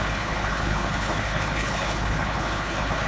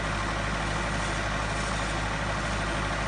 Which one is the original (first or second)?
second